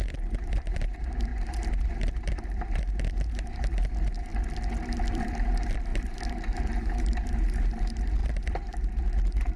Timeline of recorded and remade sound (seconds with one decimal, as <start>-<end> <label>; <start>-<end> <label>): 0.0-4.3 remade; 4.3-5.1 recorded; 5.1-9.6 remade